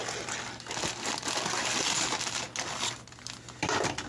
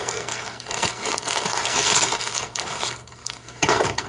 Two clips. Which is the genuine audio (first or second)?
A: first